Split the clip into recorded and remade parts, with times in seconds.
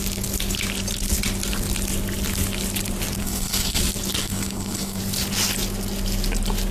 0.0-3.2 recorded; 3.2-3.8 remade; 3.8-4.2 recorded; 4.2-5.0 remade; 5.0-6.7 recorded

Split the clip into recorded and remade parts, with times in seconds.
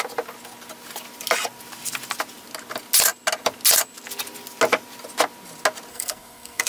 0.0-5.9 recorded; 5.9-6.7 remade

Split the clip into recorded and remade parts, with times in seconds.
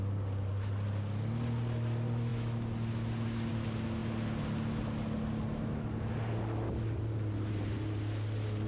0.0-8.7 recorded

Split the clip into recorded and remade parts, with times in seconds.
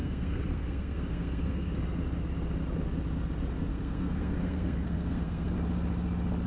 0.0-1.8 remade; 1.8-3.7 recorded; 3.7-5.5 remade; 5.5-6.5 recorded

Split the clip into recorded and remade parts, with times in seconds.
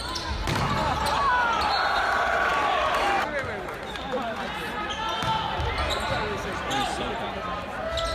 0.0-8.1 recorded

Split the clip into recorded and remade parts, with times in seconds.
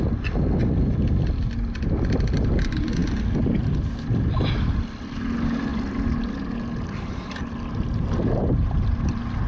0.0-9.5 recorded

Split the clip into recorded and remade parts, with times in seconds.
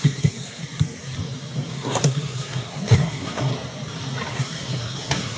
0.0-0.6 remade; 0.6-1.7 recorded; 1.7-3.5 remade; 3.5-4.3 recorded; 4.3-5.4 remade